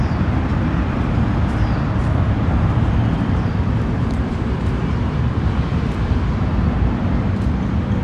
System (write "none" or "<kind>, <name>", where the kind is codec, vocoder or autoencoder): vocoder, BigVGAN v2